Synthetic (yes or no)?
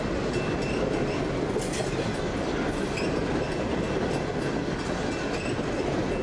no